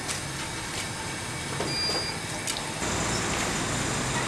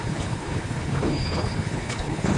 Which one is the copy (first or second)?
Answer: second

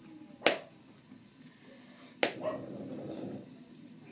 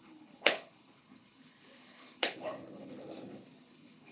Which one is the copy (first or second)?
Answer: second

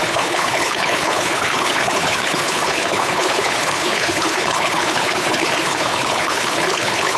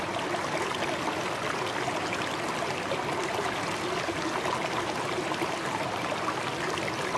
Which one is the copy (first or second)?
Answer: first